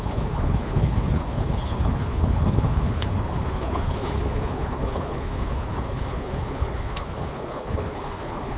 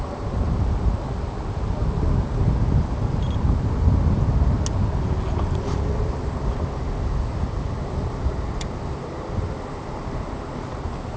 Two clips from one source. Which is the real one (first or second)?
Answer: second